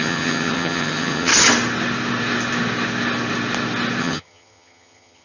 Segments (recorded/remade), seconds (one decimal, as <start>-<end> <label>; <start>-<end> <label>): 0.0-1.3 remade; 1.3-4.0 recorded; 4.0-5.2 remade